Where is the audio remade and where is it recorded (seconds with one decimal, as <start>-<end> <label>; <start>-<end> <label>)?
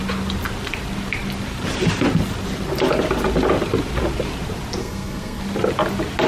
0.0-4.8 recorded; 4.8-5.4 remade; 5.4-6.3 recorded